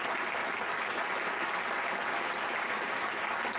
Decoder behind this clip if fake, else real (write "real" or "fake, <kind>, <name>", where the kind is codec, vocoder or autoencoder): real